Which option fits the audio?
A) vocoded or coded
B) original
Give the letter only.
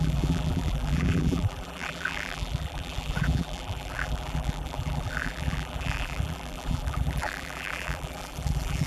A